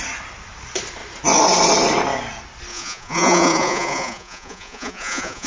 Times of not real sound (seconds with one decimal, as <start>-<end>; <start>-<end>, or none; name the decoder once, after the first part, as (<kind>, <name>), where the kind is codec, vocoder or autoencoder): 2.7-5.5 (vocoder, Vocos)